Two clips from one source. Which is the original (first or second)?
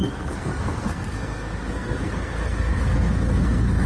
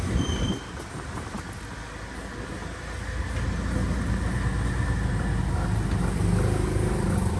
second